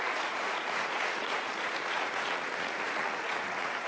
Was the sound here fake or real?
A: fake